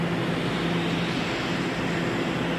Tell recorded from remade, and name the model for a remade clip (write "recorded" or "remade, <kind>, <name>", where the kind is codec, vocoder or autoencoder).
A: recorded